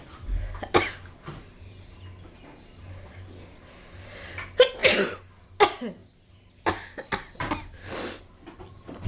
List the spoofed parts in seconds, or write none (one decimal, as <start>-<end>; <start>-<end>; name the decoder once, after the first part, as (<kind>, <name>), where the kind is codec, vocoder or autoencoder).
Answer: none